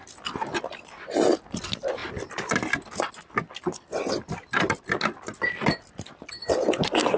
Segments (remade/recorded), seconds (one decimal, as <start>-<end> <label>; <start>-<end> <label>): 0.0-2.0 remade; 2.0-6.3 recorded; 6.3-7.2 remade